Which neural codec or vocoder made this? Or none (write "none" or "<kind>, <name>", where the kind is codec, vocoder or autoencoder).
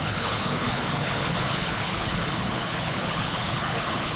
codec, HILCodec